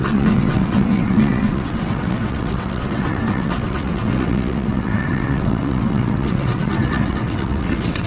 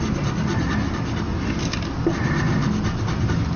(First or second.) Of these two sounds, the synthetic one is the first